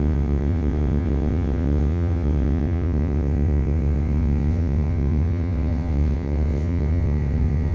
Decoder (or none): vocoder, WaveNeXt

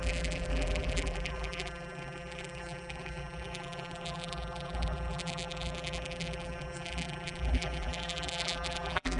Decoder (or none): vocoder, BigVGAN v2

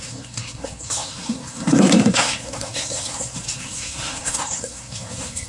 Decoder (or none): codec, SNAC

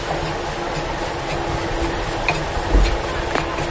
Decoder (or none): none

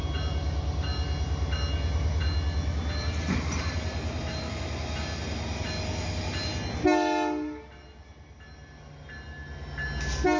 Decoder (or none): none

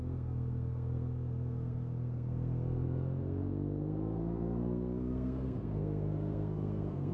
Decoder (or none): codec, SNAC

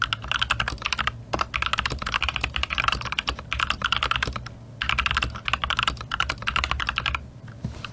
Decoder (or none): none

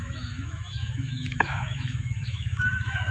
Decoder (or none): autoencoder, DAC-VAE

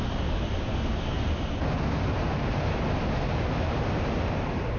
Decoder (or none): none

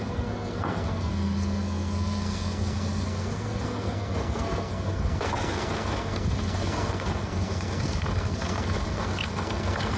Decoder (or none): codec, SNAC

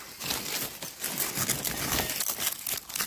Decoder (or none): none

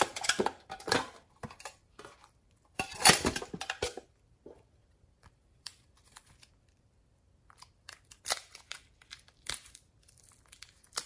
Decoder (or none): vocoder, BigVGAN v2